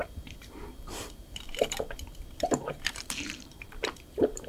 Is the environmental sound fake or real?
fake